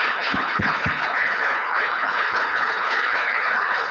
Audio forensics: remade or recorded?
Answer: remade